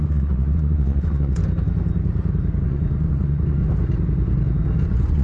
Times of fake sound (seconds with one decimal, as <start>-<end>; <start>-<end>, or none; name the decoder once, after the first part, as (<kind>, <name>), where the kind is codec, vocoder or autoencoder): 0.0-1.4 (vocoder, Vocos); 2.6-3.6; 4.8-5.2